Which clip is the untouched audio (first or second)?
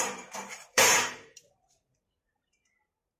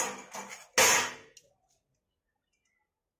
second